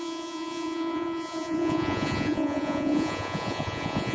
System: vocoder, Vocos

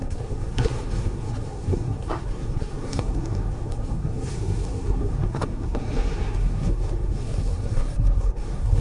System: codec, SNAC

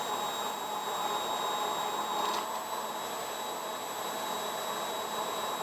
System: none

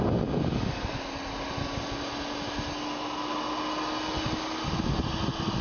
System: none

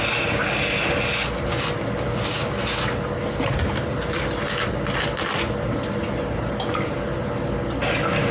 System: none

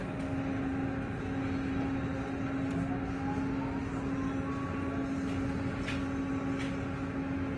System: none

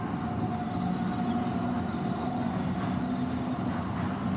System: none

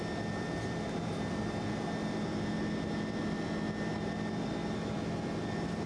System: none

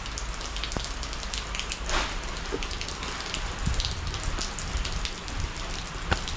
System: none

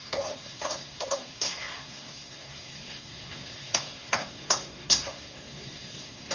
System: codec, SNAC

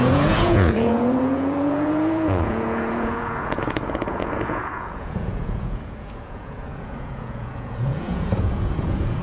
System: vocoder, Vocos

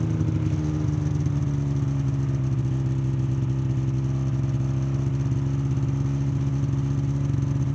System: none